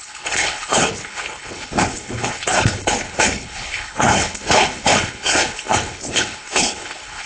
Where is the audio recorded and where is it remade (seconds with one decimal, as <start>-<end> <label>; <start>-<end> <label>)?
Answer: 0.0-7.3 remade